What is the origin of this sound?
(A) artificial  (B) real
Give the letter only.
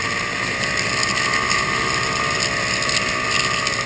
B